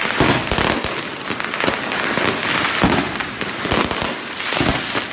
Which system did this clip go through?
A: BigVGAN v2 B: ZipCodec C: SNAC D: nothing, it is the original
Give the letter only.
D